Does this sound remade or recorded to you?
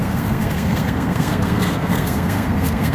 remade